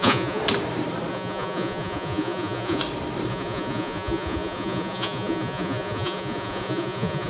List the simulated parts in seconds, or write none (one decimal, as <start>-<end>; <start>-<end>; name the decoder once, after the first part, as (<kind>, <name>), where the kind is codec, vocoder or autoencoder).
0.0-0.4 (vocoder, Vocos); 1.1-2.8; 3.3-7.3